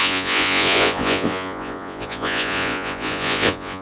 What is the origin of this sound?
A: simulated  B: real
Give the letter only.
A